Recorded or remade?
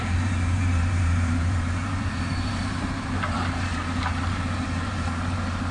remade